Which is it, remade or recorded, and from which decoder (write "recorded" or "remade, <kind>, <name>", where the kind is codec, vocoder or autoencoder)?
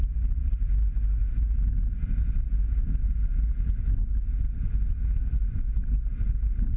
recorded